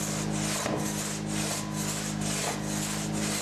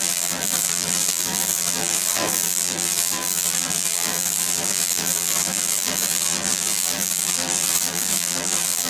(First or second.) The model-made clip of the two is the second